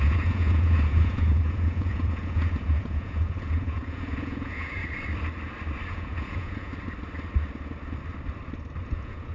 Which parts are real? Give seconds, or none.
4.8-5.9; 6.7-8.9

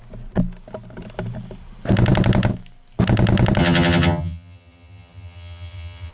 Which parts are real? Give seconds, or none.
0.0-3.6

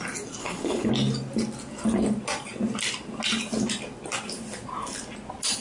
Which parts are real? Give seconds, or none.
0.0-0.4; 0.9-5.6

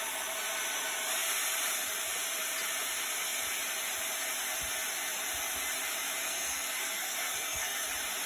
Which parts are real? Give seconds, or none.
0.0-6.2; 7.9-8.3

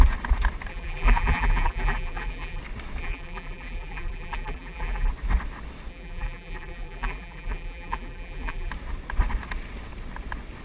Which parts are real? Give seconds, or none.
0.0-0.7; 2.6-3.0; 5.1-5.9; 8.7-10.6

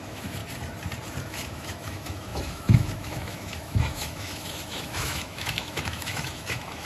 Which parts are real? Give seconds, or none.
0.4-1.2

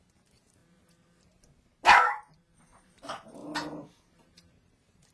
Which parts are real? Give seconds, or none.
0.6-2.6; 3.4-4.2

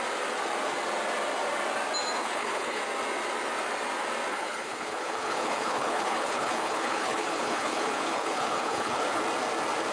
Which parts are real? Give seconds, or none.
0.0-2.2; 2.8-4.3; 9.2-9.9